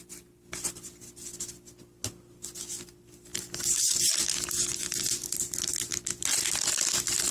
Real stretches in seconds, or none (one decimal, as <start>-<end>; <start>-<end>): 3.3-4.0; 5.9-7.3